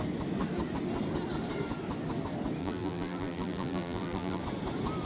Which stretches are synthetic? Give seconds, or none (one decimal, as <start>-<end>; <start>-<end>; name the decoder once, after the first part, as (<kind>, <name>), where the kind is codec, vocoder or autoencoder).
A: 2.6-4.4 (vocoder, BigVGAN v2)